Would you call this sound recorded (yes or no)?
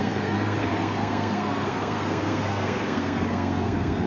no